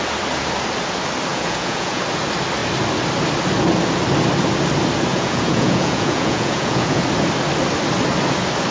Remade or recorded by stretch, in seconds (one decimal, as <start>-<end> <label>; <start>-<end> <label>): 0.0-1.3 recorded; 1.3-2.0 remade; 2.0-5.1 recorded; 5.1-7.0 remade; 7.0-8.7 recorded